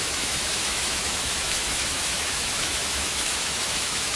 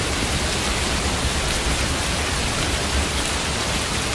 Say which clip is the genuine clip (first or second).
second